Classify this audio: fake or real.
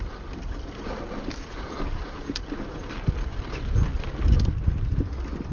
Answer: real